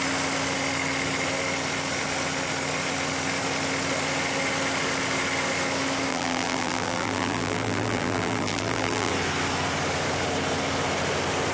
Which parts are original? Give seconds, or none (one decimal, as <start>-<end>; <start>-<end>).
0.0-6.1; 9.1-11.5